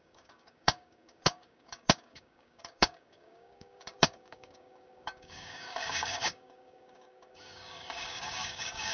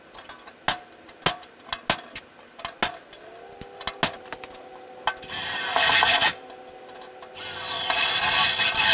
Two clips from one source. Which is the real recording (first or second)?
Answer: second